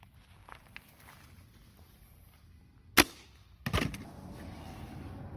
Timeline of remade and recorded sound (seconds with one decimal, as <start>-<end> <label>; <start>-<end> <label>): 0.0-5.4 recorded